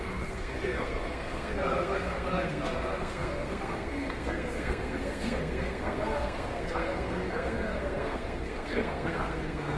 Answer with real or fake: fake